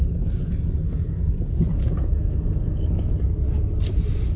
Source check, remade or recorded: recorded